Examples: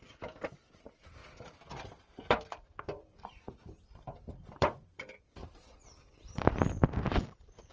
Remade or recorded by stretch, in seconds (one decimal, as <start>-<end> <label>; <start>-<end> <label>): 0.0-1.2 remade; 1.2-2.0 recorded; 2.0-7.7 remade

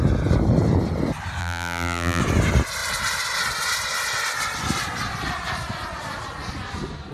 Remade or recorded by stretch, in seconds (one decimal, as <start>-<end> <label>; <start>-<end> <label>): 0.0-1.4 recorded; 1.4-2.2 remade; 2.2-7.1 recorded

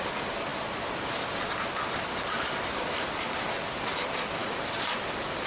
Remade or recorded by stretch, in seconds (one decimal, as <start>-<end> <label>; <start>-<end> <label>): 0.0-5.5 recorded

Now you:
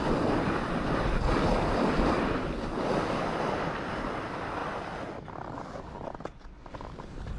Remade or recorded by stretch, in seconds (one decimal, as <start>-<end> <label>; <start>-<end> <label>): 0.0-1.6 recorded; 1.6-4.6 remade; 4.6-5.9 recorded; 5.9-7.4 remade